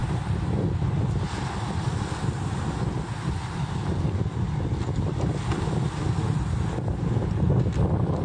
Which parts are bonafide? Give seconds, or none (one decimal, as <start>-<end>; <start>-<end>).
0.0-8.2